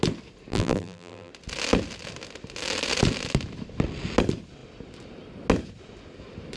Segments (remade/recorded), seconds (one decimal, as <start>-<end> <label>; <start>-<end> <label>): 0.0-0.5 recorded; 0.5-1.3 remade; 1.3-6.6 recorded